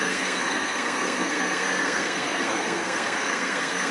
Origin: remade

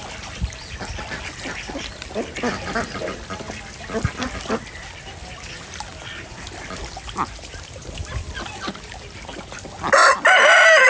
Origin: recorded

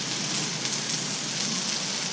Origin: recorded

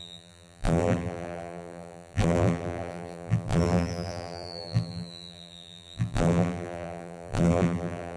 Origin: remade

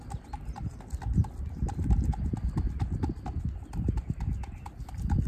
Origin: recorded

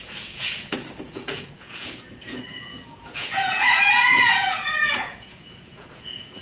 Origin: remade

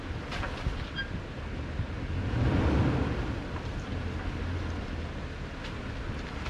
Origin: recorded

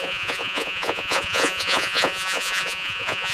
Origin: remade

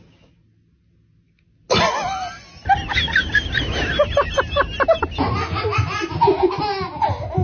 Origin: recorded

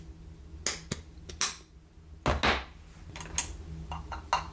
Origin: recorded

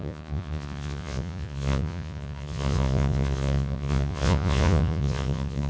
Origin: remade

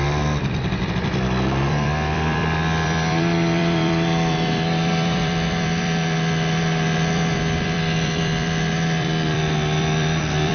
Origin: remade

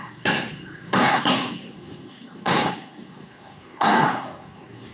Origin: remade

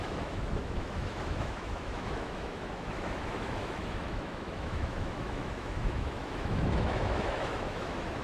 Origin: remade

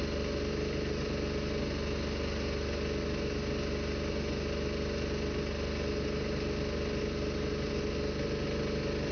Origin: recorded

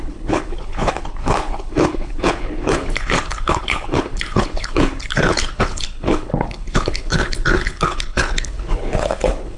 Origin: remade